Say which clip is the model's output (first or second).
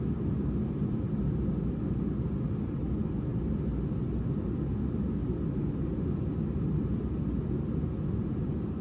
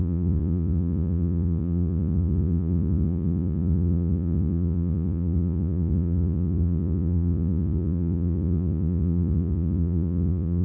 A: second